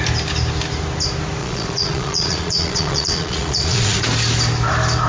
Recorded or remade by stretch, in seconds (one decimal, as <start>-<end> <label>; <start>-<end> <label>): 0.0-1.4 recorded; 1.4-4.0 remade; 4.0-5.1 recorded